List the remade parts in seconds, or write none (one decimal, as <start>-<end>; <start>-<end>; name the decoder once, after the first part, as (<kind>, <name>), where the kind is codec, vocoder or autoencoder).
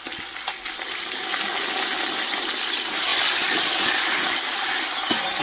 none